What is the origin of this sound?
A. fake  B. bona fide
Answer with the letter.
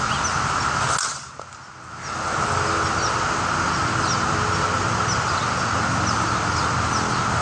B